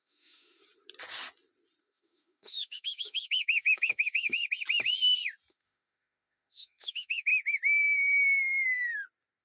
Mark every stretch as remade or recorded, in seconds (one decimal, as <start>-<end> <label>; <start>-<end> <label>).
0.0-0.6 remade; 0.6-1.8 recorded; 1.8-4.4 remade; 4.4-5.5 recorded; 5.5-7.3 remade; 7.3-9.4 recorded